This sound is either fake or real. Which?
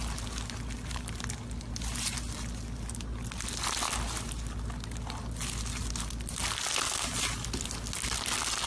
real